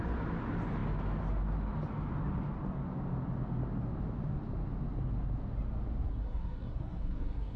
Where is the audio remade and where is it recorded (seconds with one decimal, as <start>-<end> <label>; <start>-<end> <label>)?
0.0-6.1 recorded; 6.1-7.6 remade